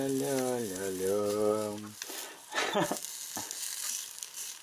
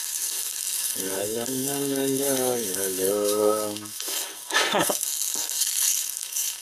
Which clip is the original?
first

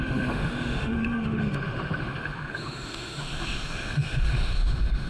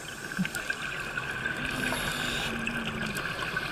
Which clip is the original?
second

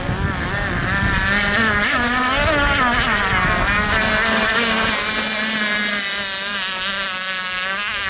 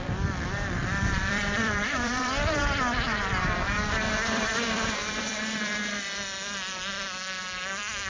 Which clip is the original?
first